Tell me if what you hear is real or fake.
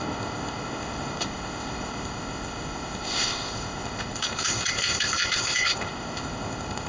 fake